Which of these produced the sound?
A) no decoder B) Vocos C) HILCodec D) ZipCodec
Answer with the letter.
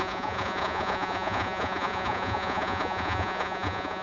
B